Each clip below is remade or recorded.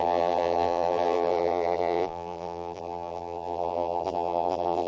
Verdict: remade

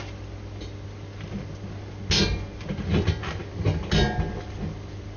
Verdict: recorded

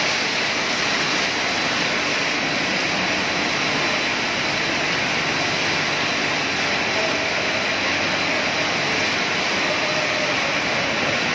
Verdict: recorded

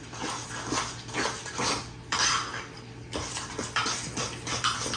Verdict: recorded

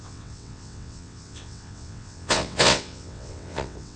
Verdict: remade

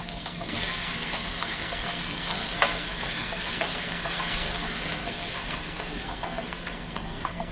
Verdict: remade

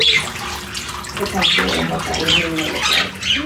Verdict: recorded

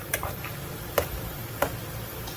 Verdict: recorded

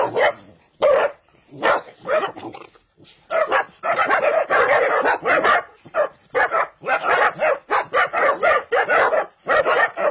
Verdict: recorded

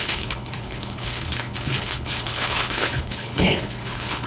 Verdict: remade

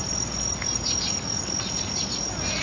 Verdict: recorded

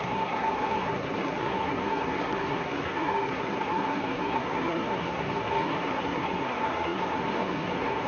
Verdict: remade